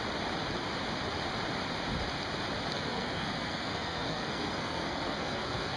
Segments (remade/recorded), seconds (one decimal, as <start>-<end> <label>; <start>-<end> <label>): 0.0-2.7 recorded; 2.7-5.8 remade